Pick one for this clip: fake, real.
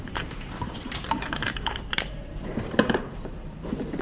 fake